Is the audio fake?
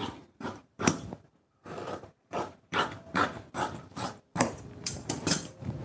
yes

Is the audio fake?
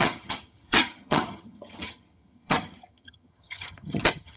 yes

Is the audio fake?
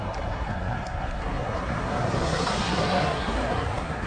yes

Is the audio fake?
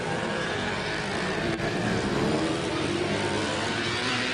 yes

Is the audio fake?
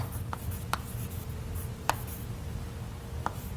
no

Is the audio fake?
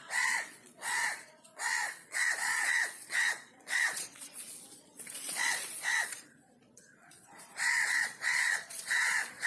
yes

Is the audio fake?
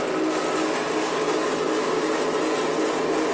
no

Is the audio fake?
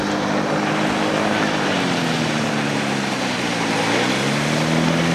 no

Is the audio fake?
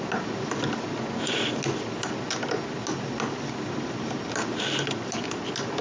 no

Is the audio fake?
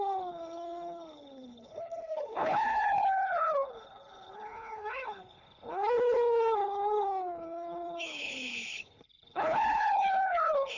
yes